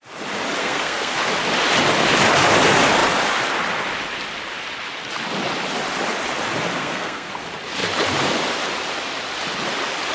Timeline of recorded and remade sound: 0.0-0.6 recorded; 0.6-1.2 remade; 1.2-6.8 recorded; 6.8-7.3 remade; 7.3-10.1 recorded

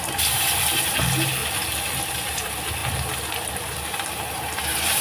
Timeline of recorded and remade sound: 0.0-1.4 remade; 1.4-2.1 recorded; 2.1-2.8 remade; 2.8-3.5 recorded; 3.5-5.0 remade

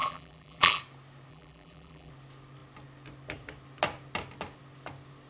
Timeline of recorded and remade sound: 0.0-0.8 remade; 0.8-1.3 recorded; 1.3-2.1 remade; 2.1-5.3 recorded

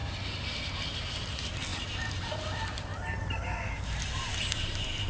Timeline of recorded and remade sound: 0.0-1.7 recorded; 1.7-2.2 remade; 2.2-2.9 recorded; 2.9-3.4 remade; 3.4-4.3 recorded; 4.3-5.1 remade

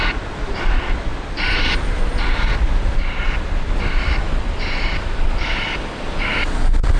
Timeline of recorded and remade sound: 0.0-7.0 recorded